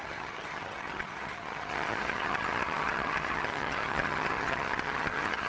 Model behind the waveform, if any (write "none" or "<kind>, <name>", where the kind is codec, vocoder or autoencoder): vocoder, HiFi-GAN